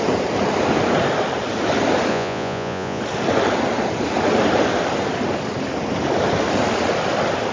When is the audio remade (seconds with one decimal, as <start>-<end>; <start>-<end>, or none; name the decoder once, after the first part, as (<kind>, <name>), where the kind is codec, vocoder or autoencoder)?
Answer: 2.1-3.0 (vocoder, Vocos)